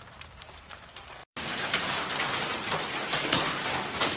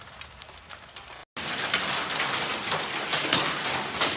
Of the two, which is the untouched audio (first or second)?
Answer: second